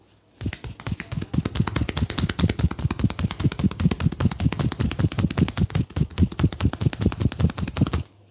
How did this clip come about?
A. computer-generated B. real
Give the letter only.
B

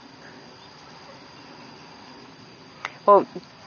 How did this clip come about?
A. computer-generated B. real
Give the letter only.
B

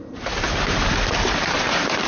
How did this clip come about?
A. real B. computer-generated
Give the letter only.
B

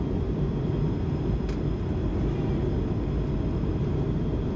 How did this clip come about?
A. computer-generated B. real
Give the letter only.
B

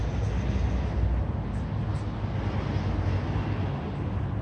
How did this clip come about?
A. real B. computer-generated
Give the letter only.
A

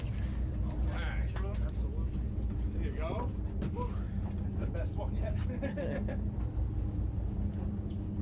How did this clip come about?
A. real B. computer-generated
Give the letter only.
A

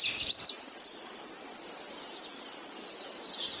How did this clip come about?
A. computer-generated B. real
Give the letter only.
B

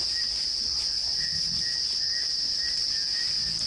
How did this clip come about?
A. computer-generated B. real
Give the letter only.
B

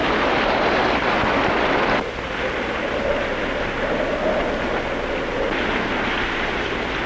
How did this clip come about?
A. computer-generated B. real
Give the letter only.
B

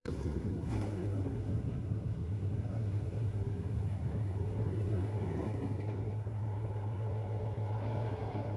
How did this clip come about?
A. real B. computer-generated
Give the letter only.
B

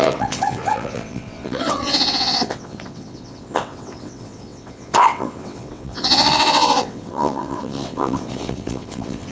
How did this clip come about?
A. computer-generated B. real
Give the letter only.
A